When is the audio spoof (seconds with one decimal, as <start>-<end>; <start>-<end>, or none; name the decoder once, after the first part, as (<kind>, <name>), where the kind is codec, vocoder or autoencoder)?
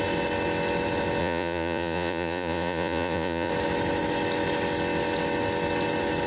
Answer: 1.2-3.5 (vocoder, Vocos)